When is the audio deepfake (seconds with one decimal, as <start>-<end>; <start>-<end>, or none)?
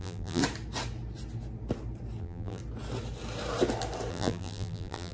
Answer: 0.0-0.4; 2.2-2.6; 4.1-5.1